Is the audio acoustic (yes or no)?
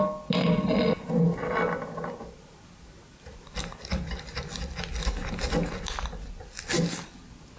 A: yes